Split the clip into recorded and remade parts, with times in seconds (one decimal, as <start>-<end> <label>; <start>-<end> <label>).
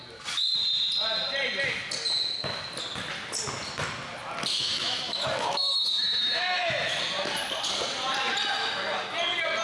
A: 0.0-4.5 recorded; 4.5-7.0 remade; 7.0-9.6 recorded